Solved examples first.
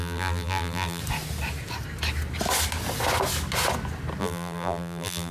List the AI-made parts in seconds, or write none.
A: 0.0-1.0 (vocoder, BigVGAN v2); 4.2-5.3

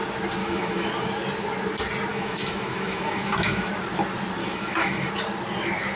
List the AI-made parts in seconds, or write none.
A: 0.4-0.9 (autoencoder, DAC-VAE); 2.1-3.7; 4.4-5.1

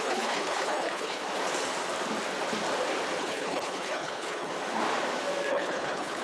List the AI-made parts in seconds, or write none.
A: 0.0-1.2 (codec, HILCodec); 3.2-4.5; 5.5-6.2

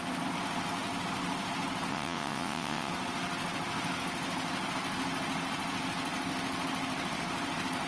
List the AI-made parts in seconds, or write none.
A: 1.9-2.9 (vocoder, WaveNeXt)

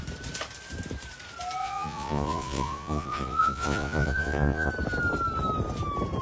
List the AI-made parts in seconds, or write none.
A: 1.6-4.7 (vocoder, Vocos)

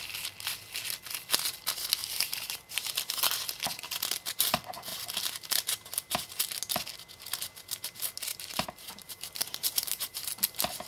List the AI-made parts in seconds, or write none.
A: 2.0-3.0 (vocoder, BigVGAN v2); 8.3-10.4